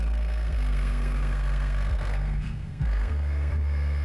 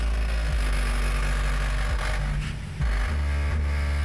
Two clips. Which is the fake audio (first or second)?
first